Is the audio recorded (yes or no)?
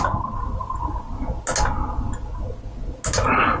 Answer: yes